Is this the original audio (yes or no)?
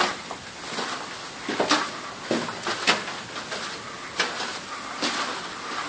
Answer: yes